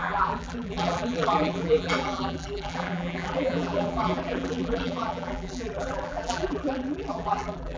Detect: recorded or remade remade